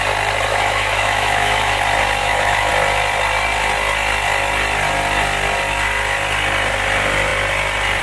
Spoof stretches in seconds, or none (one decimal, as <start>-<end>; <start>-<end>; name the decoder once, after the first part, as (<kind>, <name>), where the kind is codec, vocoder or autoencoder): 0.5-1.8 (autoencoder, DAC-VAE); 2.2-2.7